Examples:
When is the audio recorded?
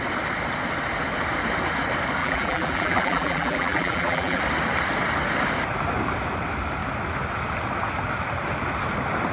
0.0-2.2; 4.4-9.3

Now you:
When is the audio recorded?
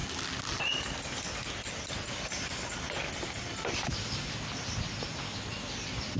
0.0-6.2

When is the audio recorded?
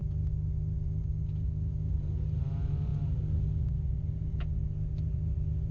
0.0-5.7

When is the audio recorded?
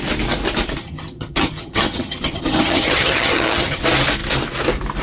0.0-0.8; 3.8-5.0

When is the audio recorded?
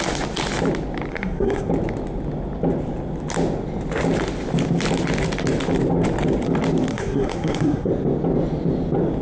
0.0-1.1; 1.7-6.9; 7.9-9.2